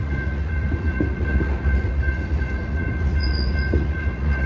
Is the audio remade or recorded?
remade